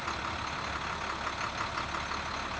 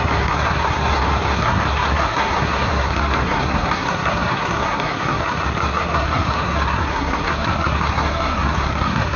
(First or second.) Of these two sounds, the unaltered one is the first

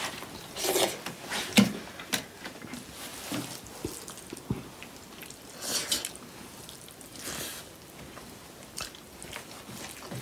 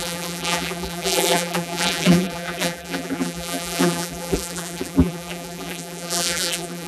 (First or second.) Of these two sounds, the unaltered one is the first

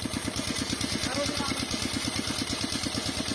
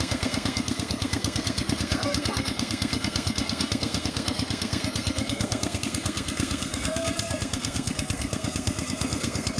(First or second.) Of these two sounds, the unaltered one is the first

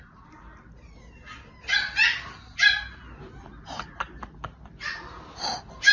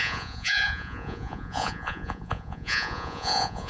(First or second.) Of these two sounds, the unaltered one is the first